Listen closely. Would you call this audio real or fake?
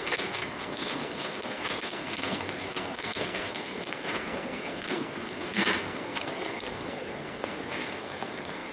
fake